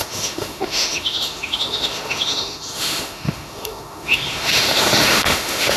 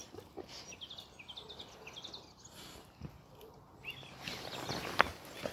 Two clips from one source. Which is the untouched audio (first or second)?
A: second